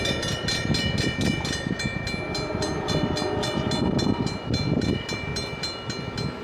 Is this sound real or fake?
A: real